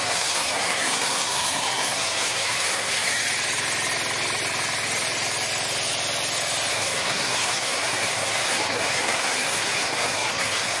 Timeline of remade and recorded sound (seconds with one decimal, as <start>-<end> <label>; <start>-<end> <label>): 0.0-3.2 remade; 3.2-6.7 recorded; 6.7-10.8 remade